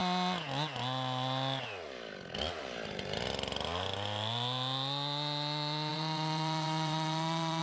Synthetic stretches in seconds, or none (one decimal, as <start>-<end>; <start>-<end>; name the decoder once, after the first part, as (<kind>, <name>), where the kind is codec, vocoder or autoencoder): 5.9-7.6 (vocoder, WaveNeXt)